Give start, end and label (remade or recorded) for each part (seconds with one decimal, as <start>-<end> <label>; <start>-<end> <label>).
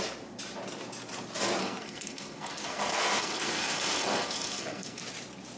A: 0.0-1.6 recorded; 1.6-5.0 remade; 5.0-5.6 recorded